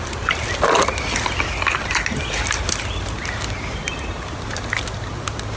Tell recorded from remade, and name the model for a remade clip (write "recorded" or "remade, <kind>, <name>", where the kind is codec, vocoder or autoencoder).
recorded